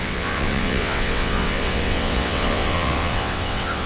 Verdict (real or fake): fake